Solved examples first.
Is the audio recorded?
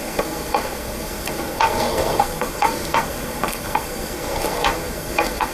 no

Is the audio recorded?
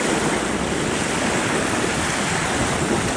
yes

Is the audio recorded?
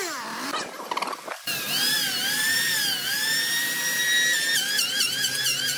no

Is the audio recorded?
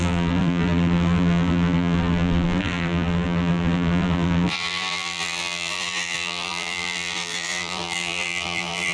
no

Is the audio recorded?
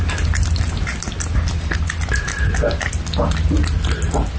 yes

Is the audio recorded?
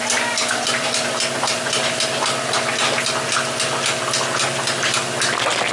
yes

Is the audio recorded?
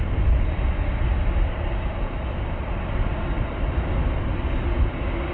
yes